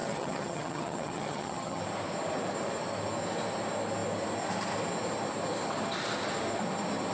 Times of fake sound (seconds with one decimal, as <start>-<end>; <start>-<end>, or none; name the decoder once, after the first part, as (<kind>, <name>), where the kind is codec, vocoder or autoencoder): 0.0-1.8 (vocoder, HiFi-GAN)